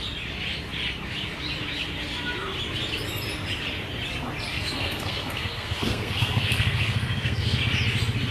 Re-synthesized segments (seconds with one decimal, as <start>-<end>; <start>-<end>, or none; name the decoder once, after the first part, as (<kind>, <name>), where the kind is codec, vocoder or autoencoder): 4.5-7.6 (codec, SNAC)